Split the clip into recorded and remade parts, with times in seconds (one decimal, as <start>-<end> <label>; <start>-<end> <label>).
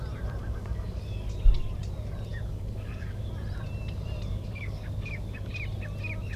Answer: 0.0-0.4 recorded; 0.4-1.0 remade; 1.0-2.3 recorded; 2.3-3.3 remade; 3.3-4.3 recorded; 4.3-5.5 remade; 5.5-6.4 recorded